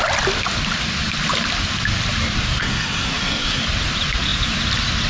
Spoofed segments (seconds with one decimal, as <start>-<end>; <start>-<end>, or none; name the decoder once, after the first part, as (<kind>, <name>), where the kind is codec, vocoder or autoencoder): 2.6-3.6 (codec, SNAC)